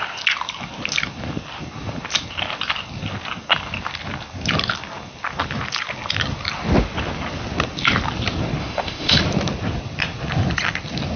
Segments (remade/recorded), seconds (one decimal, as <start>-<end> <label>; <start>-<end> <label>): 0.0-8.6 recorded; 8.6-9.2 remade; 9.2-11.2 recorded